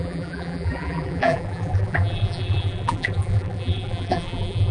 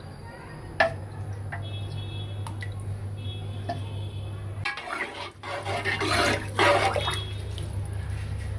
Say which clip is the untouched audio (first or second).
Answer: second